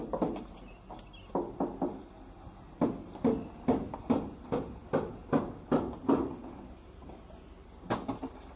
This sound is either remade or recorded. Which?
recorded